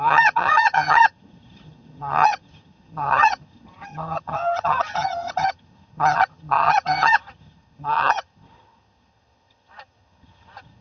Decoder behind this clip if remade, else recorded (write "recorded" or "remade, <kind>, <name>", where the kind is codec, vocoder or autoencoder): remade, vocoder, HiFi-GAN